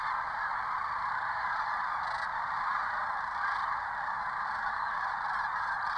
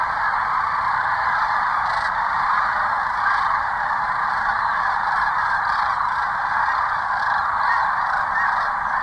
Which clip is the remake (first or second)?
second